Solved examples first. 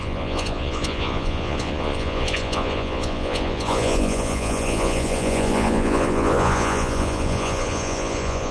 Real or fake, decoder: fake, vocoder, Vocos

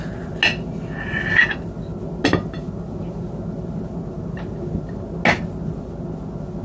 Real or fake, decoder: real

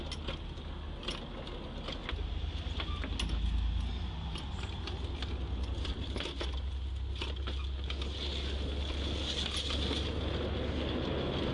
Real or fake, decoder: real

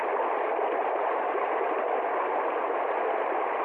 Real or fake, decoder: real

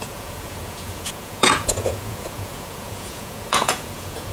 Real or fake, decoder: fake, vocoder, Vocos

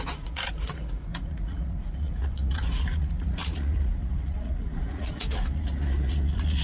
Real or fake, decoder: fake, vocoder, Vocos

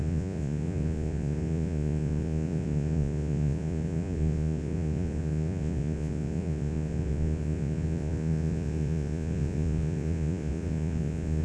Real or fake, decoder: fake, vocoder, Vocos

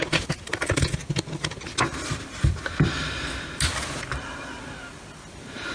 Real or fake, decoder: real